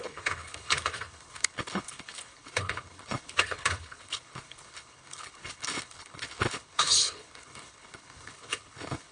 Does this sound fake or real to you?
fake